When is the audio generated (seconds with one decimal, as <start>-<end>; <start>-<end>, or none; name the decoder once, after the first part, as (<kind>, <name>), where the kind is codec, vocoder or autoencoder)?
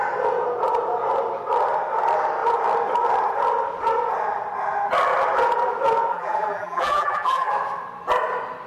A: 6.1-7.5 (vocoder, BigVGAN v2)